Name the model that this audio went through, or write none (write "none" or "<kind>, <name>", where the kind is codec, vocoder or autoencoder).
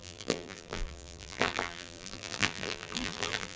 vocoder, BigVGAN v2